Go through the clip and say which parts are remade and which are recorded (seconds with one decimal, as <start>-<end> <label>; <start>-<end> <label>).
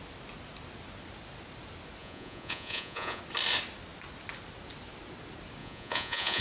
0.0-2.0 recorded; 2.0-3.2 remade; 3.2-5.6 recorded; 5.6-6.4 remade